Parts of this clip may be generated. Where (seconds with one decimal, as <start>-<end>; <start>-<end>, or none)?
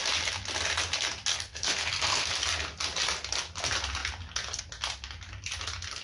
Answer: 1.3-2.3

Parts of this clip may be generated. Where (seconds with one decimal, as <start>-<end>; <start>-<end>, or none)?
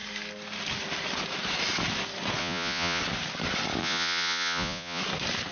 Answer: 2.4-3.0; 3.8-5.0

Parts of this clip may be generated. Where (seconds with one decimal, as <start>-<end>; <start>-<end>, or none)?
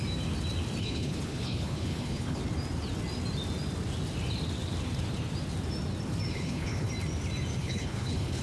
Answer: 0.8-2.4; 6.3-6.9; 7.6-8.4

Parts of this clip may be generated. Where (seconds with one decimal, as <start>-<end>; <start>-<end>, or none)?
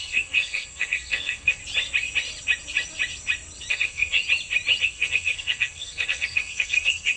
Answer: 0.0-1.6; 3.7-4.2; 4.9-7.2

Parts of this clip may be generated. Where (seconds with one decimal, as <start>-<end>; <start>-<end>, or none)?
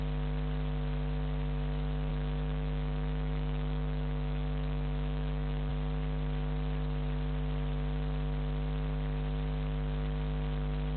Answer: 2.1-5.7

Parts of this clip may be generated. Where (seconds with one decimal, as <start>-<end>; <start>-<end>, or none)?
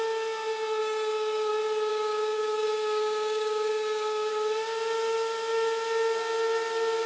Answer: 0.8-1.5; 1.9-4.3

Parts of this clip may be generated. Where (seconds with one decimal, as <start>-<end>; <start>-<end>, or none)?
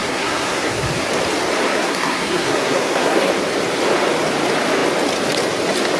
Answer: 0.0-0.9; 1.7-3.3